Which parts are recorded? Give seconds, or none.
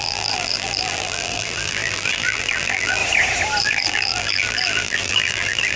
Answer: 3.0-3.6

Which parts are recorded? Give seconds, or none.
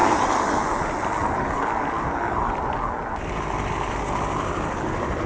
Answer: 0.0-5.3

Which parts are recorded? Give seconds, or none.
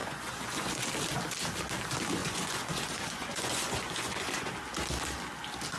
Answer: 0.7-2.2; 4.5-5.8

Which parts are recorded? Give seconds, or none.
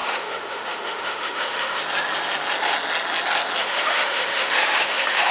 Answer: 1.8-3.6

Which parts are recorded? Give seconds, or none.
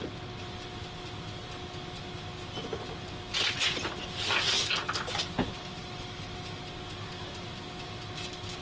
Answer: 0.0-5.8; 6.6-8.6